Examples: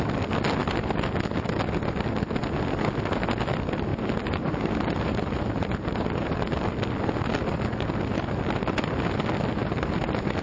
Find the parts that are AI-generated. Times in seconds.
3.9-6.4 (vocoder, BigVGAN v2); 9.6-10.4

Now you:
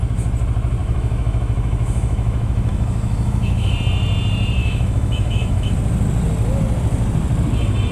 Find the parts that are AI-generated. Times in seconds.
0.8-3.7 (autoencoder, DAC-VAE); 4.6-5.7

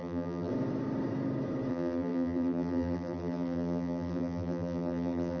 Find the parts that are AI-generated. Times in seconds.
0.0-0.5 (vocoder, BigVGAN v2); 1.7-5.4

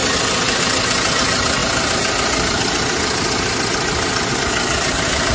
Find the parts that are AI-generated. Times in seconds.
none

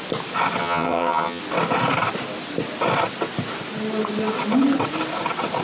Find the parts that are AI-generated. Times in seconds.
0.6-1.4 (vocoder, HiFi-GAN)

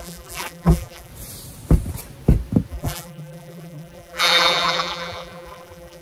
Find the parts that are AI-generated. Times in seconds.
0.0-1.1 (vocoder, BigVGAN v2); 2.7-6.0

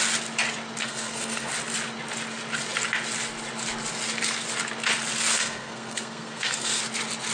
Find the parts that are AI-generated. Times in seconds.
0.8-1.5 (codec, SNAC); 5.3-6.8